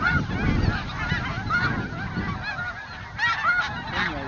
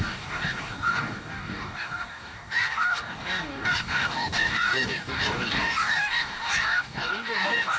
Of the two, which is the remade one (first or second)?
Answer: second